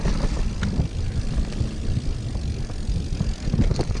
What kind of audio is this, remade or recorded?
recorded